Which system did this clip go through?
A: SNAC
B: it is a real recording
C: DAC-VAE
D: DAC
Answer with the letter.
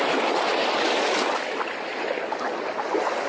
B